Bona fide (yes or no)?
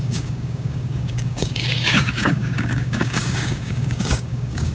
no